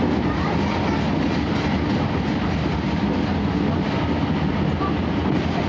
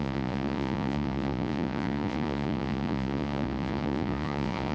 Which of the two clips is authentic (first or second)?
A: first